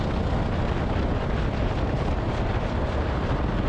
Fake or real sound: real